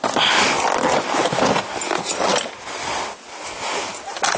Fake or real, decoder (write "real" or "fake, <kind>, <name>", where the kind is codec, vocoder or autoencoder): real